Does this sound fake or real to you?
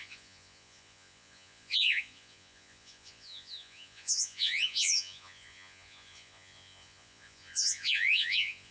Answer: fake